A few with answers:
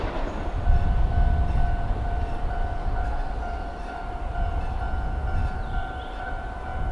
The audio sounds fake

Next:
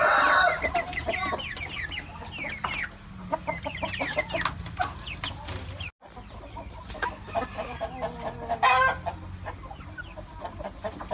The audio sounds real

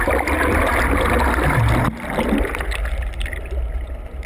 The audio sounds real